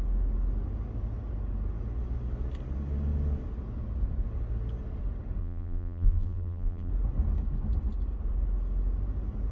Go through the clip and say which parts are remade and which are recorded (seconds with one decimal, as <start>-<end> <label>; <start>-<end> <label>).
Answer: 0.0-5.4 recorded; 5.4-6.9 remade; 6.9-9.5 recorded